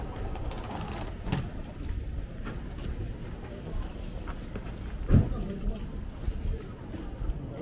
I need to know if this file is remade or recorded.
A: recorded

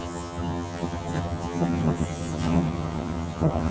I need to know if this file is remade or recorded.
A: remade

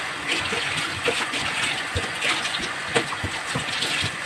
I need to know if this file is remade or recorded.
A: remade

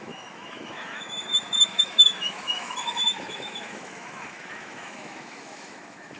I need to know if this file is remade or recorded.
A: remade